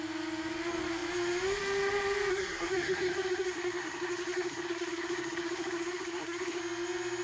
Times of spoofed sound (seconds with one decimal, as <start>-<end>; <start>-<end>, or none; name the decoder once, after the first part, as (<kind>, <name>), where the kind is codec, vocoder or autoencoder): 2.3-6.6 (codec, SNAC)